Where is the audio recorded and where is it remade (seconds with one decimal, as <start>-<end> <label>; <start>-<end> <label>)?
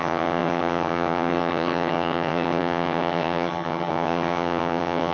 0.0-5.1 remade